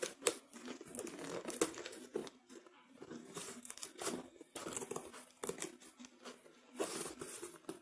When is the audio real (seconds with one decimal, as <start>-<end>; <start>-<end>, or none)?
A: 0.0-2.2; 4.7-7.8